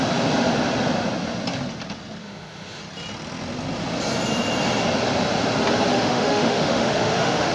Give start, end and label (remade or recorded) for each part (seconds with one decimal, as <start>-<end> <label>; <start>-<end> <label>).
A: 0.0-2.2 recorded; 2.2-2.8 remade; 2.8-5.9 recorded; 5.9-7.5 remade

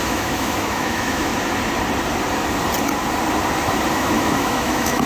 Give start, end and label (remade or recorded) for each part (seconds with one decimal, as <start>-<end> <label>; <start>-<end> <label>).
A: 0.0-1.3 remade; 1.3-3.9 recorded; 3.9-5.1 remade